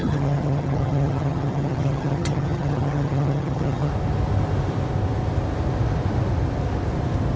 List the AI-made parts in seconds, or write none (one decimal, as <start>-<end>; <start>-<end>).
0.0-3.9